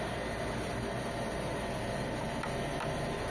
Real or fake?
real